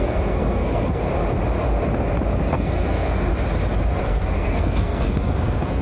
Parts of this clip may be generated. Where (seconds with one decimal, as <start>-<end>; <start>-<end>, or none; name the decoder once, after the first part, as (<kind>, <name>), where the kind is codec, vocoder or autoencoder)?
0.0-1.0 (codec, SNAC); 2.5-3.3; 4.0-5.8